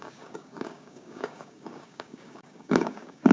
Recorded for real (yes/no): no